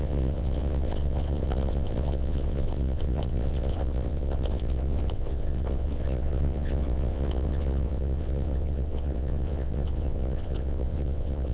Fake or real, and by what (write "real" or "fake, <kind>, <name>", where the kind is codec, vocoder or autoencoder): fake, vocoder, WaveNeXt